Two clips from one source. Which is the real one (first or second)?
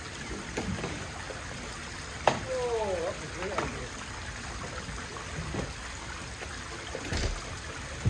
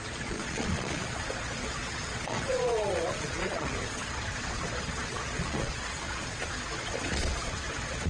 first